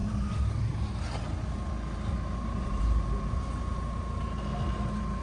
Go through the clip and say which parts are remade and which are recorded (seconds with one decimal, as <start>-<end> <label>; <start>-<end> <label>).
0.0-5.2 recorded